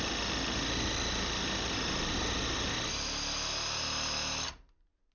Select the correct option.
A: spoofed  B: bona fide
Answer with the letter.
B